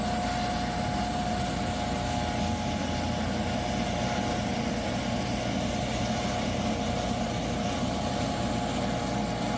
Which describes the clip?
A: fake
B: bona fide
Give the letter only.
B